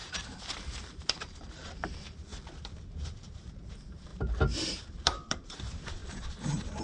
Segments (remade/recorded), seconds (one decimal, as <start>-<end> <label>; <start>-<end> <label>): 0.0-2.3 remade; 2.3-2.9 recorded; 2.9-6.8 remade